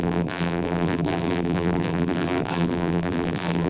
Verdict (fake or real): fake